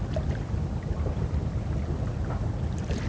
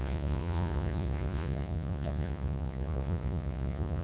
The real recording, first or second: first